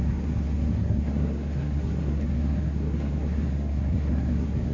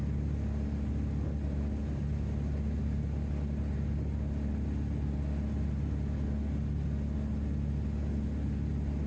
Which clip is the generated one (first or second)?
first